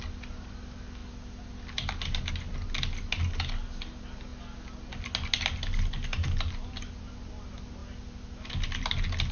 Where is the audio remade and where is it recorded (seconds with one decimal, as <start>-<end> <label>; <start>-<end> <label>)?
0.0-9.3 recorded